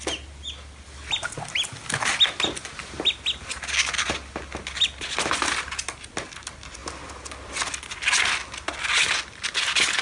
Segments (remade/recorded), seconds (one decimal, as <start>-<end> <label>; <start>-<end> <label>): 0.0-10.0 recorded